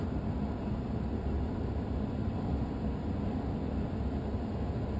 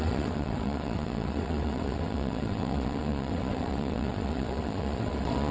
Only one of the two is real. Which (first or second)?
first